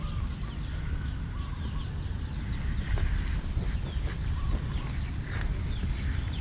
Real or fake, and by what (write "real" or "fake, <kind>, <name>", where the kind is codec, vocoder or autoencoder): real